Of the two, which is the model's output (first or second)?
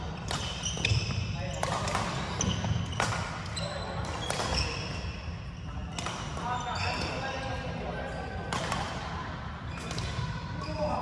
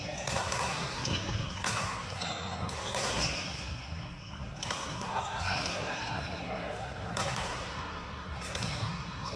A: second